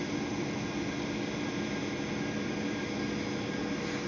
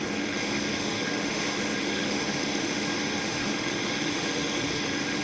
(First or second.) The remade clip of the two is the second